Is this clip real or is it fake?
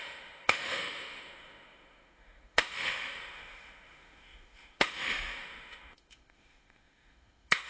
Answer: fake